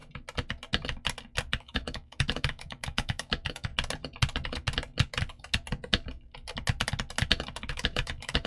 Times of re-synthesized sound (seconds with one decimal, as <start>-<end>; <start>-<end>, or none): 1.6-3.7; 7.7-8.5